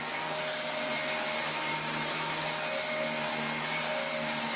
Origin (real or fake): real